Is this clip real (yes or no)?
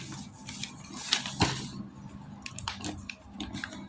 yes